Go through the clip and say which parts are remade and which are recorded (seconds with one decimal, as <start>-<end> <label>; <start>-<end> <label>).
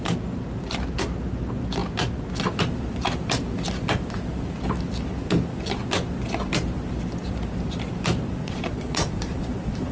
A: 0.0-8.4 recorded; 8.4-9.9 remade